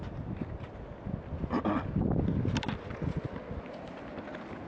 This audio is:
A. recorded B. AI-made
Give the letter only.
A